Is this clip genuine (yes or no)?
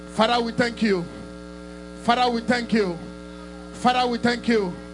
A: yes